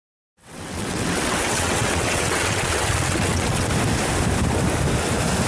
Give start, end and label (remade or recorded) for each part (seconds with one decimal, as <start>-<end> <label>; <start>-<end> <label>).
0.0-0.4 recorded; 0.4-3.7 remade; 3.7-5.5 recorded